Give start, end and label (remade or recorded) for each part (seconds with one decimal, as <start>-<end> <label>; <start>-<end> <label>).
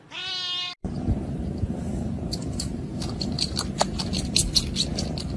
0.0-0.8 recorded; 0.8-4.0 remade; 4.0-5.4 recorded